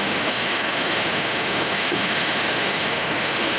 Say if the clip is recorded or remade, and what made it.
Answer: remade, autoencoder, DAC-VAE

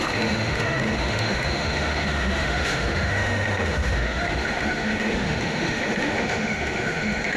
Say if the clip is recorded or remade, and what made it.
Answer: remade, autoencoder, DAC-VAE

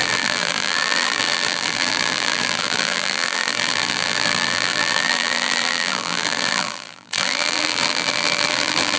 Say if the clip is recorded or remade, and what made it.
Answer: remade, vocoder, BigVGAN v2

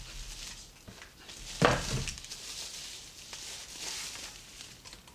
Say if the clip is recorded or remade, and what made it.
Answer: recorded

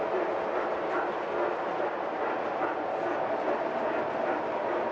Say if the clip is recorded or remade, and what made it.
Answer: recorded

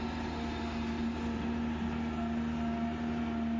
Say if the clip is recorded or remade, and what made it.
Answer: recorded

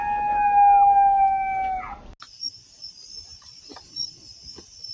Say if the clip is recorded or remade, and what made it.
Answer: recorded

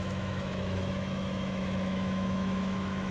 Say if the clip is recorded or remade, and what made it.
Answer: remade, autoencoder, DAC-VAE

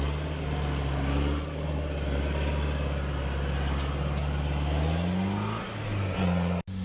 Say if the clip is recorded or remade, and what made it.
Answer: recorded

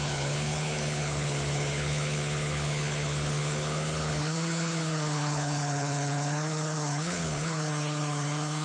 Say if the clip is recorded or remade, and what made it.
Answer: remade, codec, HILCodec